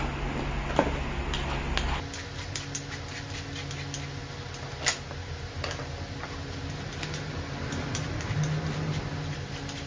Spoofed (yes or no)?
no